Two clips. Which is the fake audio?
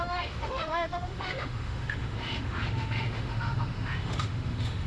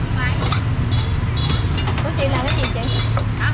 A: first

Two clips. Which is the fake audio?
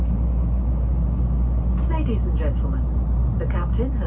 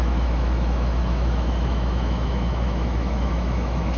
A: second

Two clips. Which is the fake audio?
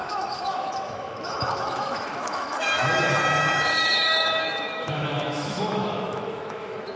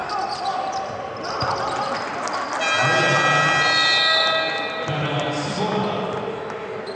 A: first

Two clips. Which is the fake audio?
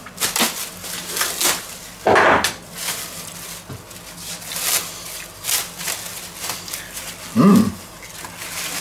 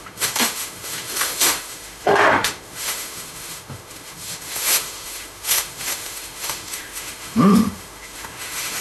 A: second